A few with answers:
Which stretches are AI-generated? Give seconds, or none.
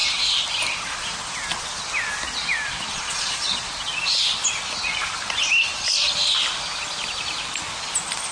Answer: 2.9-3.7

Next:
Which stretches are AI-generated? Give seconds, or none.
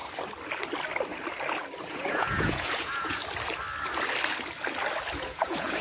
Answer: 1.8-3.2; 5.2-5.8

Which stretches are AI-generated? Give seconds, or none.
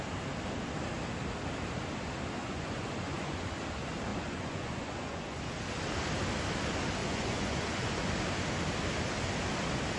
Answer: 2.4-3.5; 4.1-5.4; 7.0-8.1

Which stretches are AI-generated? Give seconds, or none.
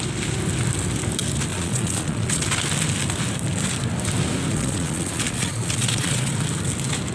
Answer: 1.5-2.4; 4.5-6.3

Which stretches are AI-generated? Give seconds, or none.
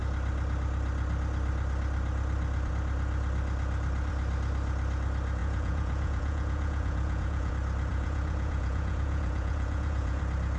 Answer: 5.4-7.5; 7.9-10.2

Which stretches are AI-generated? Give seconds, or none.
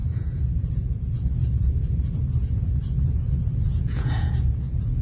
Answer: 0.0-0.7; 2.4-4.3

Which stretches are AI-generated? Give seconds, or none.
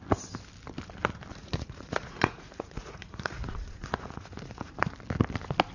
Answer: 1.3-4.7